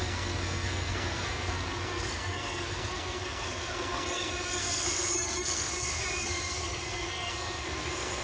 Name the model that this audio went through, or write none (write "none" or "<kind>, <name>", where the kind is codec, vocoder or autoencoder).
codec, SNAC